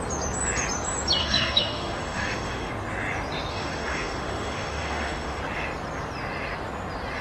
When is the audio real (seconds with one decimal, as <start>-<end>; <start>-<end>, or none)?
0.0-1.2; 2.7-3.5; 5.4-7.2